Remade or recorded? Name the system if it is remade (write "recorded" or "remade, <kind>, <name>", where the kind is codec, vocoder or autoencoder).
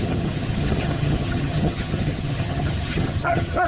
remade, vocoder, HiFi-GAN